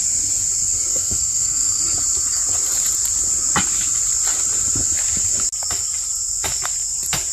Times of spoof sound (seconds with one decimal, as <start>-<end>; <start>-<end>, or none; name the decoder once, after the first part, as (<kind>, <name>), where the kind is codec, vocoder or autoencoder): 0.9-1.8 (codec, SNAC)